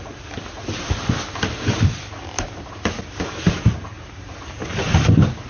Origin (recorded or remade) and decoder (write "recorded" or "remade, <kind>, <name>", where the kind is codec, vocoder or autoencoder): recorded